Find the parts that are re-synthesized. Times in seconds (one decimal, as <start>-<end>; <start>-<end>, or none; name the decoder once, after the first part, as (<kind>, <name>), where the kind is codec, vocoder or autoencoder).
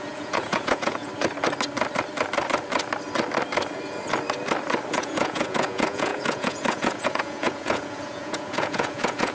0.0-1.1 (vocoder, Vocos); 4.9-9.3